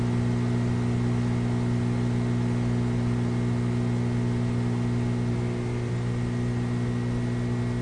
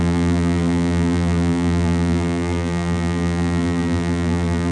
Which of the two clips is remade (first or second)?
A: second